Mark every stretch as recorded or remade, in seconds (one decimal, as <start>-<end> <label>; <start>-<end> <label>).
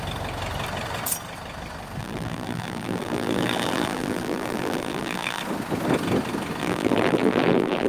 0.0-2.0 recorded; 2.0-5.4 remade; 5.4-6.6 recorded; 6.6-7.9 remade